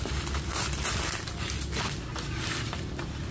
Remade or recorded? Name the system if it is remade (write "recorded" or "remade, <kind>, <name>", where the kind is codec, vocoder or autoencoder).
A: recorded